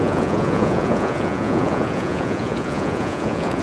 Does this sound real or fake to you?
fake